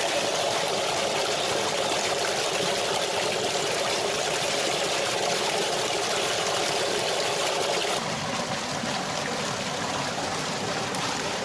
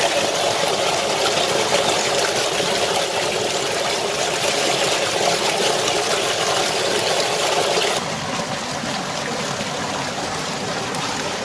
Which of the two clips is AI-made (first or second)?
first